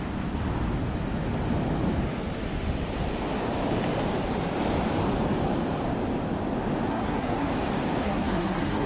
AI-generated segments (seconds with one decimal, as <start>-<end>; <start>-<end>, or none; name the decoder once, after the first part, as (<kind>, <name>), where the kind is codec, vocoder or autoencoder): 6.9-7.5 (codec, SNAC); 8.0-8.9